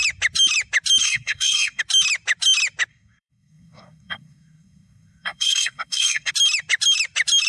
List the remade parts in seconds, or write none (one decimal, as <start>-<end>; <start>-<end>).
1.0-1.8; 2.9-6.3